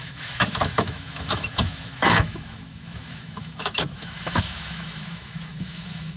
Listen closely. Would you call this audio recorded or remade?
remade